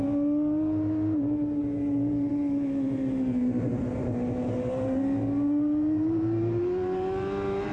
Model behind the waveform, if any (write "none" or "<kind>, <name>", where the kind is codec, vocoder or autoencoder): vocoder, BigVGAN v2